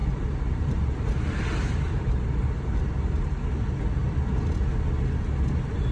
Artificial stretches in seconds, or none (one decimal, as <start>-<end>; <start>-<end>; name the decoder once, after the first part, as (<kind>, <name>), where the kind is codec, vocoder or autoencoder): 0.0-3.4 (vocoder, BigVGAN v2)